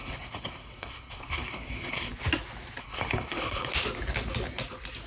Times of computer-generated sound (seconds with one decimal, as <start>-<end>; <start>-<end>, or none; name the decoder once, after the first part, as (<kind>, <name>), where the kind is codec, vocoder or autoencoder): 0.0-2.1 (codec, HILCodec); 2.8-3.7